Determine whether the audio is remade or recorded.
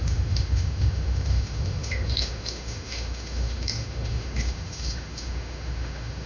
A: remade